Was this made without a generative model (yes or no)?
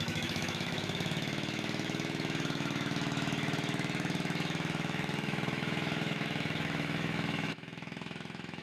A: no